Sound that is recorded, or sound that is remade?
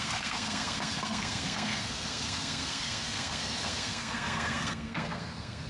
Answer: remade